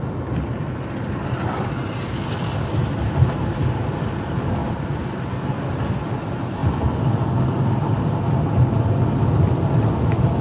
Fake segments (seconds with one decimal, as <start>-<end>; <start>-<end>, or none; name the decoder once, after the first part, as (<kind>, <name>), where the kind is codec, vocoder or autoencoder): 4.6-5.3 (vocoder, BigVGAN v2)